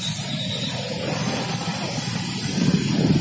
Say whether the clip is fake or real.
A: real